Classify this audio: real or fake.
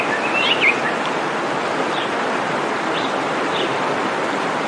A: real